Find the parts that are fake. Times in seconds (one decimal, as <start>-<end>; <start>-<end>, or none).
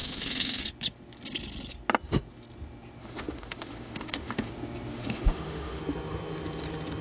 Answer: 0.0-0.6; 3.0-4.5; 4.9-5.8